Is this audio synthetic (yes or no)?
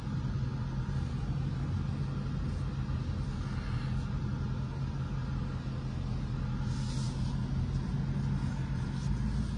no